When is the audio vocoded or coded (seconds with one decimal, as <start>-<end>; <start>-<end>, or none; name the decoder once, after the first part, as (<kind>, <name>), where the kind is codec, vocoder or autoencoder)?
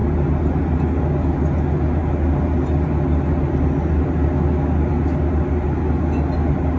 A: none